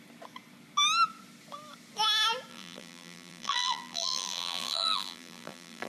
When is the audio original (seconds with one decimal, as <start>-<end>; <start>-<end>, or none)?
0.0-2.5